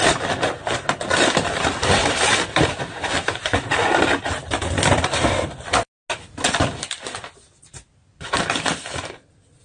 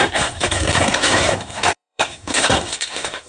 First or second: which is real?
first